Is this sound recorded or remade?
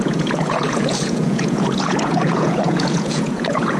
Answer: remade